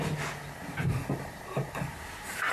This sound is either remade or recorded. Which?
recorded